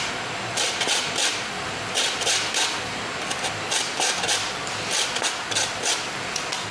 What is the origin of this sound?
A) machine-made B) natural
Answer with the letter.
A